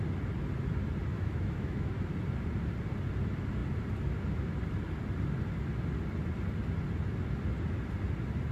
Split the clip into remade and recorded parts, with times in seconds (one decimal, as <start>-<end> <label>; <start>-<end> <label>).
0.0-1.1 recorded; 1.1-1.9 remade; 1.9-8.5 recorded

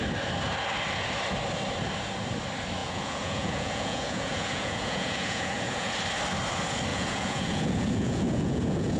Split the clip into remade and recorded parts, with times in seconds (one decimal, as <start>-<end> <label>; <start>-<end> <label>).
0.0-2.8 recorded; 2.8-5.9 remade; 5.9-6.9 recorded; 6.9-9.0 remade